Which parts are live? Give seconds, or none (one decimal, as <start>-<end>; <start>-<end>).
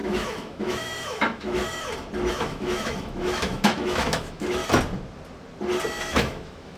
1.6-2.3; 4.6-6.0